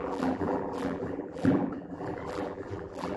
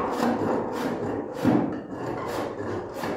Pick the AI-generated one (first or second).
first